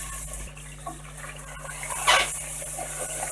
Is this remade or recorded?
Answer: recorded